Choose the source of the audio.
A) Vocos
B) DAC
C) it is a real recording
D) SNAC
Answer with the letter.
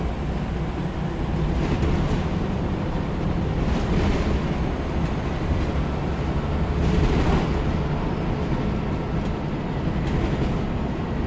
C